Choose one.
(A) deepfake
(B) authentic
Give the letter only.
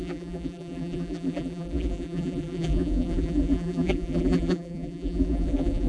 A